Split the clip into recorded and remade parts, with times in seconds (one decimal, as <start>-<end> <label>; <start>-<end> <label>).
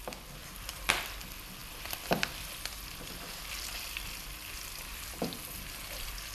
0.0-0.4 recorded; 0.4-0.9 remade; 0.9-1.6 recorded; 1.6-5.4 remade; 5.4-6.3 recorded